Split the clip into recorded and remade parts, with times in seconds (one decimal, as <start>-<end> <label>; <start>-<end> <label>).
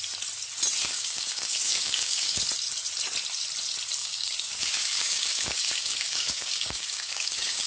0.0-0.8 recorded; 0.8-2.4 remade; 2.4-4.0 recorded; 4.0-7.7 remade